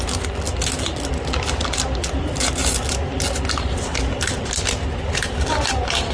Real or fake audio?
real